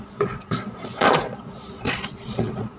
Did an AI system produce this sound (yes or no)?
yes